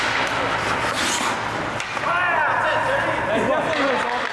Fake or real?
real